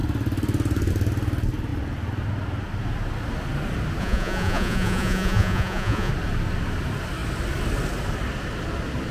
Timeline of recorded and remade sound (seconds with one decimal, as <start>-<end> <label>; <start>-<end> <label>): 0.0-4.0 recorded; 4.0-6.1 remade; 6.1-9.1 recorded